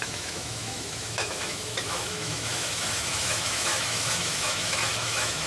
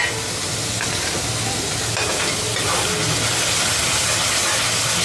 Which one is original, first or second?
second